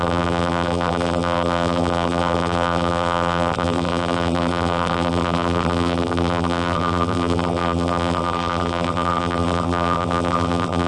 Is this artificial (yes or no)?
yes